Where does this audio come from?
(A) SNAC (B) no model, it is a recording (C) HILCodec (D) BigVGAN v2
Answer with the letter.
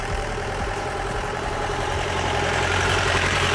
D